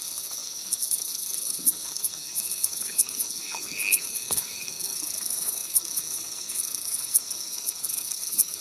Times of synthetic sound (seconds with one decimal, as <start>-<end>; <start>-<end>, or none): 0.0-8.6